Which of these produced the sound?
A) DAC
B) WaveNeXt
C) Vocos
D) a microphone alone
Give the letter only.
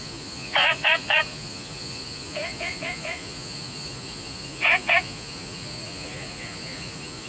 C